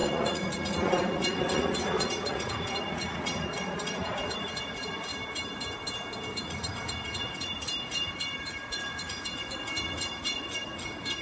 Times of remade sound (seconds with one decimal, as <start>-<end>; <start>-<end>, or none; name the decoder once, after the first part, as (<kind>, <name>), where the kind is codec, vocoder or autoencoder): 0.0-5.1 (vocoder, Vocos); 6.3-11.2